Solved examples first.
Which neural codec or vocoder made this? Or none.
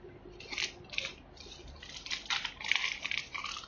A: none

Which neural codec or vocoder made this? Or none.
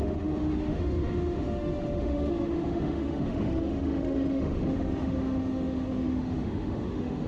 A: autoencoder, DAC-VAE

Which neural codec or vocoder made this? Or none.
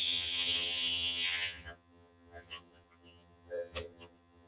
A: vocoder, HiFi-GAN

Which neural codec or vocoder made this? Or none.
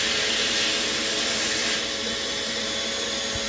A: none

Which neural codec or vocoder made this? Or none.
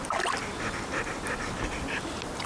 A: none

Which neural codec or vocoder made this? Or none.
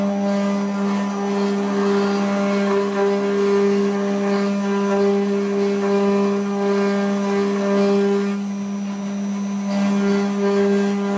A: none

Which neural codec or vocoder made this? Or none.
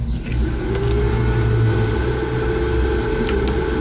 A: none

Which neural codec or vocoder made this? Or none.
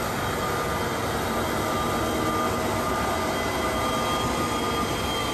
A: none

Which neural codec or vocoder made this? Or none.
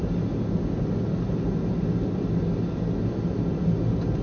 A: none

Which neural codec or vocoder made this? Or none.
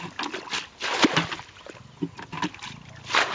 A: none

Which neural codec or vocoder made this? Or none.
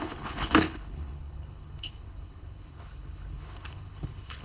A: codec, HILCodec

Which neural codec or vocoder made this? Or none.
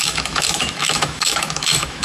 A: autoencoder, DAC-VAE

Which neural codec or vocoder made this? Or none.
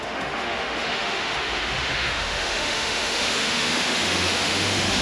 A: autoencoder, DAC-VAE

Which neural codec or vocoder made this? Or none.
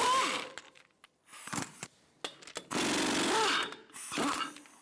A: none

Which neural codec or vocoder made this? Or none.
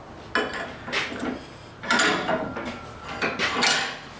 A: none